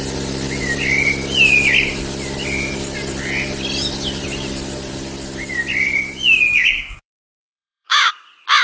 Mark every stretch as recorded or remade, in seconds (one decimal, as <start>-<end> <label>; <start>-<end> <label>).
0.0-6.5 recorded; 6.5-8.1 remade; 8.1-8.6 recorded